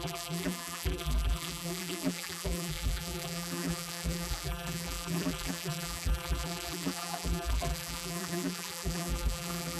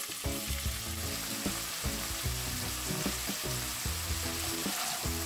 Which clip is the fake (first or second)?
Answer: first